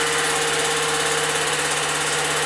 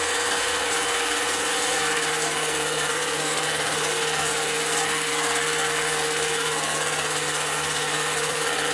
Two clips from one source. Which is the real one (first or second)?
first